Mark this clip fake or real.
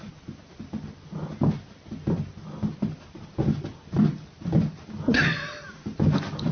real